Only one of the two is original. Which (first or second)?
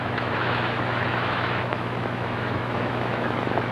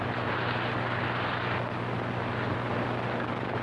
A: second